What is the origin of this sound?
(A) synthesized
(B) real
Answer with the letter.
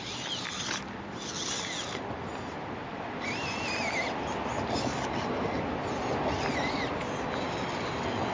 B